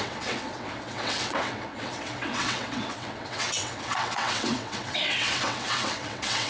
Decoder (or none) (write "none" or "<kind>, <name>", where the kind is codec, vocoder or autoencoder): vocoder, WaveNeXt